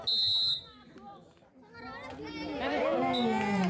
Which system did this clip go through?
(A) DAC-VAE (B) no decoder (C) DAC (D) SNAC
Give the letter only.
B